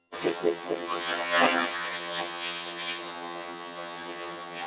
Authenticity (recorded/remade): remade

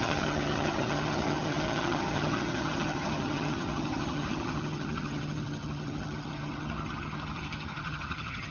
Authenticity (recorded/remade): remade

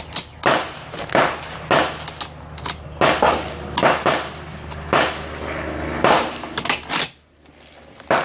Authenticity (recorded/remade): recorded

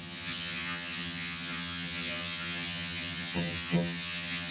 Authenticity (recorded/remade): remade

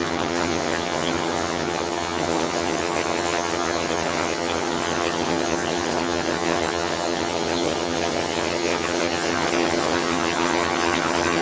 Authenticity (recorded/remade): remade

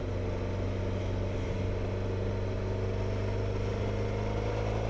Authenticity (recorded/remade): recorded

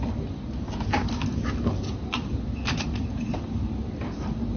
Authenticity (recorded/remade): recorded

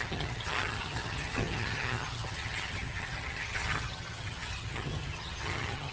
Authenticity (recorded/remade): remade